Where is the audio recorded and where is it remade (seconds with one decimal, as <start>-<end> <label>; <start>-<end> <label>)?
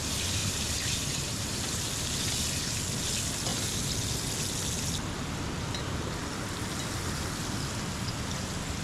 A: 0.0-0.4 recorded; 0.4-1.9 remade; 1.9-8.8 recorded